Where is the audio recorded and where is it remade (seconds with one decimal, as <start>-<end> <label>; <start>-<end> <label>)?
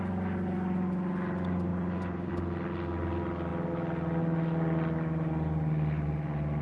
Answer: 0.0-1.7 recorded; 1.7-2.3 remade; 2.3-6.6 recorded